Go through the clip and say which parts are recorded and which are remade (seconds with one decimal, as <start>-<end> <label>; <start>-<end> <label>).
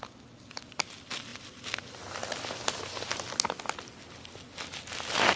0.0-5.4 recorded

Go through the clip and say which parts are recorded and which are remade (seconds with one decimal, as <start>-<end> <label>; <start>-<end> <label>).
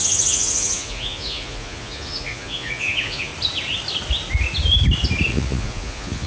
0.0-3.3 remade; 3.3-5.3 recorded; 5.3-6.3 remade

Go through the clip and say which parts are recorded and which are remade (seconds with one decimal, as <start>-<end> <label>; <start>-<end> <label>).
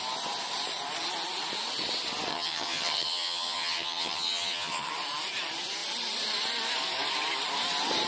0.0-2.3 recorded; 2.3-4.9 remade; 4.9-8.1 recorded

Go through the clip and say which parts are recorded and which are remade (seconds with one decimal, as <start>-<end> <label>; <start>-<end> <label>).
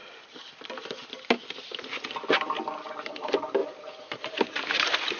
0.0-5.2 recorded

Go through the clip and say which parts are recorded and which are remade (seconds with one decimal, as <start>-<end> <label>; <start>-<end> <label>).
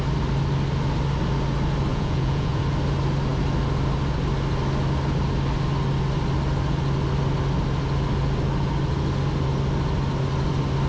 0.0-1.9 recorded; 1.9-2.6 remade; 2.6-10.9 recorded